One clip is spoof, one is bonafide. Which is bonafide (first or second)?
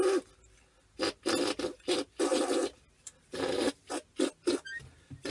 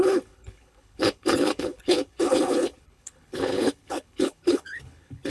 first